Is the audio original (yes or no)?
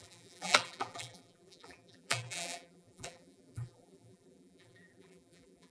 no